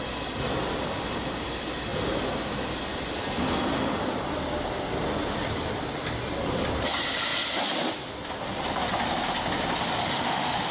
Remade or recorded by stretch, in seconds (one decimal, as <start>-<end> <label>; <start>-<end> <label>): 0.0-10.0 recorded; 10.0-10.7 remade